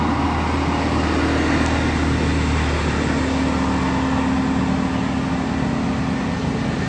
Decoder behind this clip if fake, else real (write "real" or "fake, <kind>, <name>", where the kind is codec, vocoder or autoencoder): real